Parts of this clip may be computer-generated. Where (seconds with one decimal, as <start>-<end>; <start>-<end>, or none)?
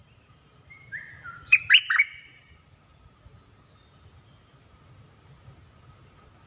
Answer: 0.0-1.6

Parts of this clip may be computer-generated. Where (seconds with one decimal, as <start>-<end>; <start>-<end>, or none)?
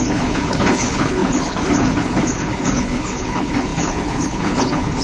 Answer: 0.0-5.0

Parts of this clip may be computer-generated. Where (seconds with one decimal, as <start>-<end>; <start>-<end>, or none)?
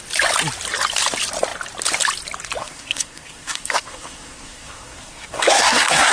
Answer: 2.6-6.1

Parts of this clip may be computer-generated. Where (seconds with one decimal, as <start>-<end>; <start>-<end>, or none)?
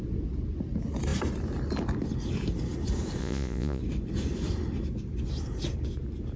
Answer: 3.2-3.8